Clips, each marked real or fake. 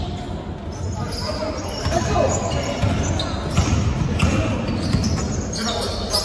real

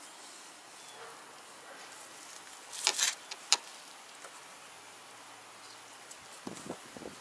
real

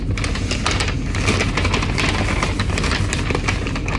real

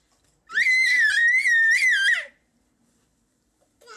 fake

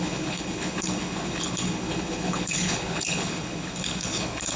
fake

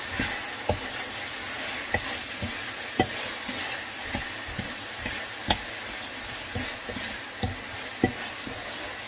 real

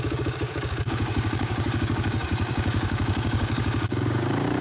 fake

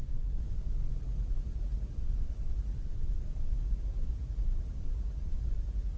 fake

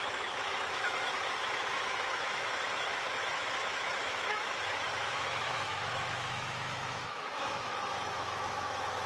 fake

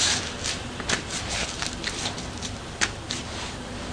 real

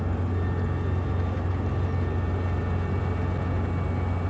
real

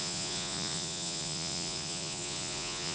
fake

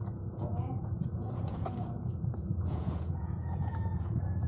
fake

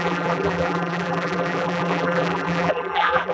fake